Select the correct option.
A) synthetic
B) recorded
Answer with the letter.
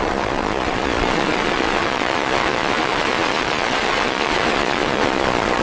A